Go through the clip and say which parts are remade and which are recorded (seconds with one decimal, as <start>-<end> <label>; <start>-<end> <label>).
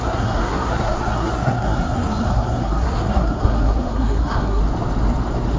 0.0-4.6 remade; 4.6-5.6 recorded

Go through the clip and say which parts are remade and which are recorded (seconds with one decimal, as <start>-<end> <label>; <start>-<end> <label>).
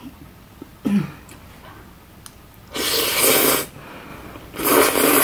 0.0-5.2 recorded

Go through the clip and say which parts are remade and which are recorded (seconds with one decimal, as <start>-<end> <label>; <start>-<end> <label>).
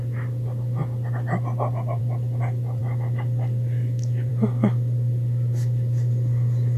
0.0-6.8 recorded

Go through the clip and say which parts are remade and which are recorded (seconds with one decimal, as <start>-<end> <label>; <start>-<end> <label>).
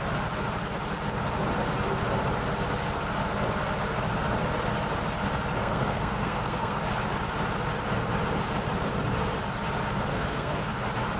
0.0-5.6 recorded; 5.6-6.8 remade; 6.8-10.1 recorded; 10.1-10.7 remade; 10.7-11.2 recorded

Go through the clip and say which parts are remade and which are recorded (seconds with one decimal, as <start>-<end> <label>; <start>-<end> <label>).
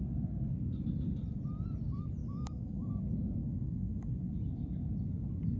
0.0-2.2 recorded; 2.2-2.9 remade; 2.9-3.4 recorded; 3.4-4.2 remade; 4.2-5.6 recorded